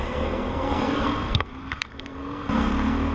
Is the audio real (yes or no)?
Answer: no